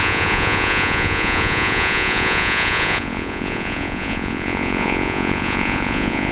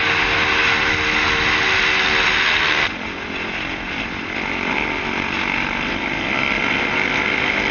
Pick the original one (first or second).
second